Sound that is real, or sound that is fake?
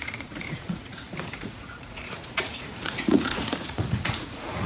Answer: fake